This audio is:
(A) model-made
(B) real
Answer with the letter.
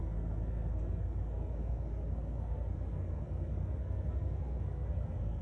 A